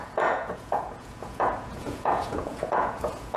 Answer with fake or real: fake